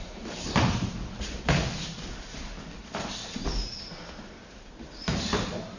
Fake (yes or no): no